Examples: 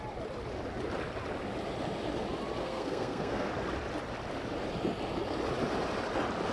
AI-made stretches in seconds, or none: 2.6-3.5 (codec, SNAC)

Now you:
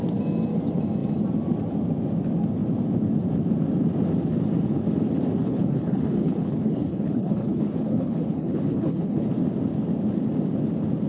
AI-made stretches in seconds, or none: 5.4-9.3 (codec, HILCodec)